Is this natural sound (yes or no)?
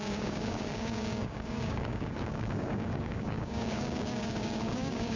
no